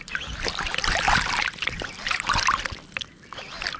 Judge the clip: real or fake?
real